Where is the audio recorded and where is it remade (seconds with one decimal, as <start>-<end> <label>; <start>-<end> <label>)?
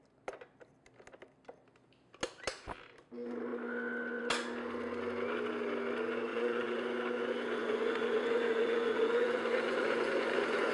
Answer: 0.0-6.3 recorded; 6.3-6.8 remade; 6.8-7.6 recorded; 7.6-10.7 remade